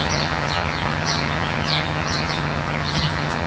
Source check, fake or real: fake